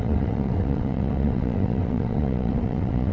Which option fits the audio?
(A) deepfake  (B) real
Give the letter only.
A